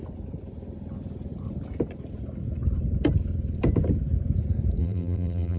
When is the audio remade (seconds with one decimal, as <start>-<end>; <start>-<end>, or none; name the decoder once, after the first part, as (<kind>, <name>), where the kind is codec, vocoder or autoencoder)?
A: 4.8-5.6 (vocoder, BigVGAN v2)